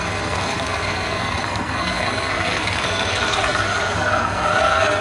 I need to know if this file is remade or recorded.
remade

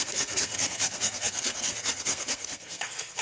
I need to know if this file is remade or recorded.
remade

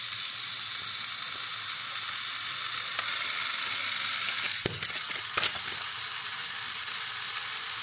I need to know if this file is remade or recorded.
recorded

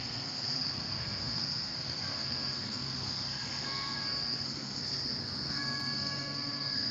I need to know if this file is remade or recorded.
remade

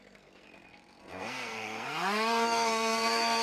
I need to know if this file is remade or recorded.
remade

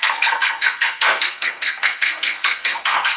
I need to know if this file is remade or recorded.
remade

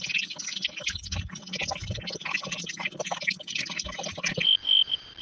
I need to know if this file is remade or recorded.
recorded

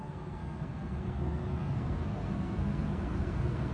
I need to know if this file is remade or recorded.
remade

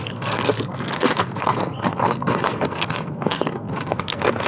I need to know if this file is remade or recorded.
remade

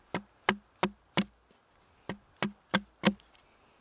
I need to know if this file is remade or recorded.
recorded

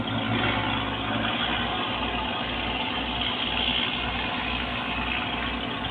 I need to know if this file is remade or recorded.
recorded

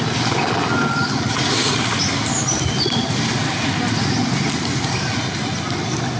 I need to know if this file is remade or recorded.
recorded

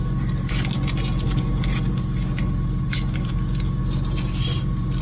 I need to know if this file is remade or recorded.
recorded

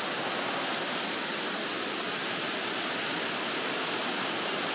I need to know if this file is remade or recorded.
recorded